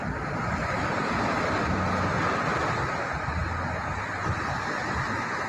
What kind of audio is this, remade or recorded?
recorded